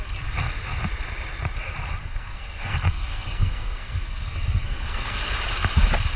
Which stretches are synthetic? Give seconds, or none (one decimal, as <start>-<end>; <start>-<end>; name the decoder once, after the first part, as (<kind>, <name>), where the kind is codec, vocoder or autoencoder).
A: 2.0-5.2 (codec, SNAC)

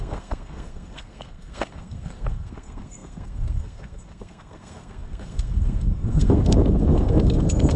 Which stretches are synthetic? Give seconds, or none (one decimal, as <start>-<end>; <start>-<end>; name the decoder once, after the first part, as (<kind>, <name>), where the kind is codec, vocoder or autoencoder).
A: 0.0-7.8 (codec, SNAC)

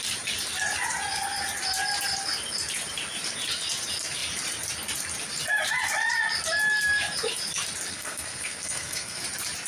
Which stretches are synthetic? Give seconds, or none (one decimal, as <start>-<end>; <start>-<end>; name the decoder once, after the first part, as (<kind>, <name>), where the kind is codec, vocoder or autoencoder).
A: 7.9-9.2 (codec, SNAC)

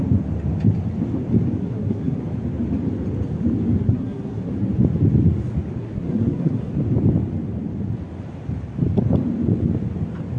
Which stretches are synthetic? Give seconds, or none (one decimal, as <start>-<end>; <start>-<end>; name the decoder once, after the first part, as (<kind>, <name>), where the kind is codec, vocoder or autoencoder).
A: 1.6-2.2 (codec, SNAC); 3.8-4.5; 5.8-6.7

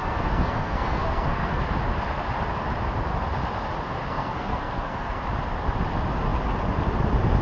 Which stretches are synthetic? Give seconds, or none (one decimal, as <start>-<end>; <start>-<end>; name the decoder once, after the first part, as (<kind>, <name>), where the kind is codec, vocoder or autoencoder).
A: 0.0-1.6 (codec, SNAC); 4.1-5.2

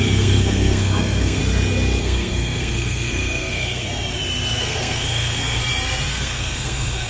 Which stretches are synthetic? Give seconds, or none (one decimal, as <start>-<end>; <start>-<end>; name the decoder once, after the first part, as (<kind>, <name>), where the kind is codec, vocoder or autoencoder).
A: 0.0-1.4 (codec, SNAC); 2.0-3.9; 4.6-5.6; 6.1-7.1

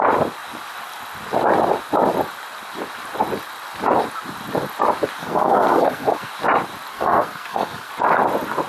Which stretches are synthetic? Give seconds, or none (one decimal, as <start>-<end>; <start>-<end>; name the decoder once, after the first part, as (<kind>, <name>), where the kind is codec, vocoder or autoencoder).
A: 5.2-6.3 (codec, SNAC); 6.9-7.9

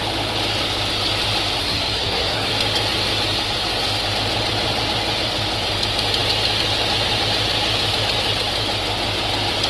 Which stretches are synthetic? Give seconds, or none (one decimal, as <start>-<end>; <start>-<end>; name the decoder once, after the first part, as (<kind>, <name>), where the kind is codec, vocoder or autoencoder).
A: 1.6-2.5 (codec, SNAC)